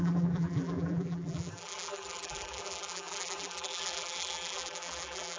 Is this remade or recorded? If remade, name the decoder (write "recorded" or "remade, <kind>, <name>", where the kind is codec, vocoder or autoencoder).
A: remade, vocoder, BigVGAN v2